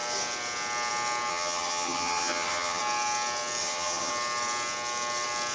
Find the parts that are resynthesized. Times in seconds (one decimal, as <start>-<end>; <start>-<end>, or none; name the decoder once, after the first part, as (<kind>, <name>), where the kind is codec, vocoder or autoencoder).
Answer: 1.3-2.8 (vocoder, HiFi-GAN); 3.6-4.1